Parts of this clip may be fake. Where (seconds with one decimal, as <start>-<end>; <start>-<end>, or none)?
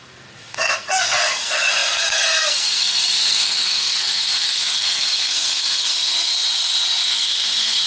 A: 0.0-6.3; 7.0-7.9